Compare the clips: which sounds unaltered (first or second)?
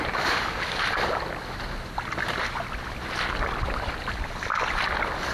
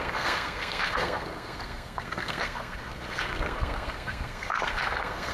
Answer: first